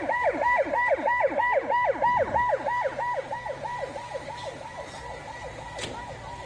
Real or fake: real